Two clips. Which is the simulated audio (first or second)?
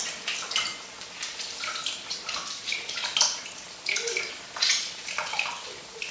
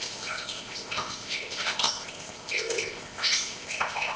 second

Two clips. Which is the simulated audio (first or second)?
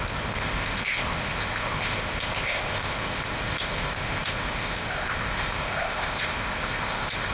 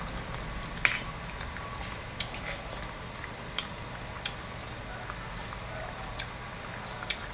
first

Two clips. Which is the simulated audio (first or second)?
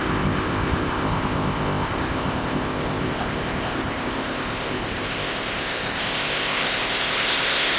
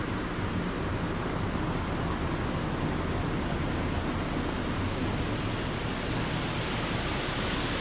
first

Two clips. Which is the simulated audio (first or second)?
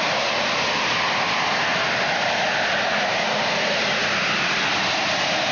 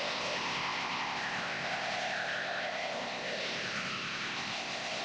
second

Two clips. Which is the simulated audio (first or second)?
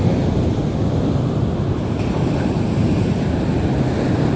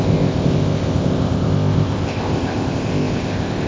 second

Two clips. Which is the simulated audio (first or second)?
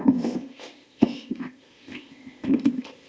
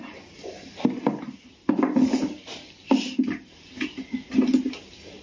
first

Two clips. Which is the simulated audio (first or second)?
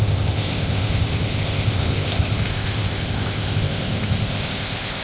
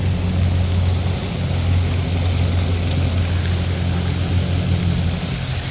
first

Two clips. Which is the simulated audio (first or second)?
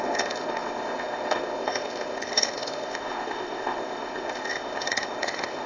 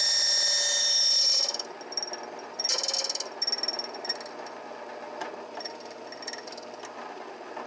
first